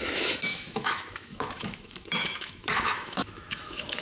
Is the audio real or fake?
fake